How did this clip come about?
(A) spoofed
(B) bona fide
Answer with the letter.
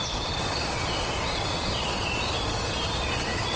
A